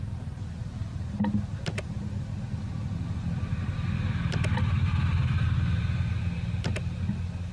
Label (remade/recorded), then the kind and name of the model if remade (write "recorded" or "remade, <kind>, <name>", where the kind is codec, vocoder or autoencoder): recorded